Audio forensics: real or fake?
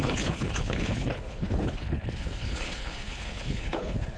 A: fake